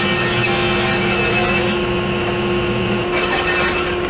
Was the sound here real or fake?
real